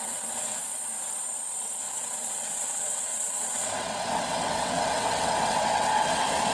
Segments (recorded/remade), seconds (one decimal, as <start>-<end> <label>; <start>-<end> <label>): 0.0-0.6 remade; 0.6-1.8 recorded; 1.8-6.5 remade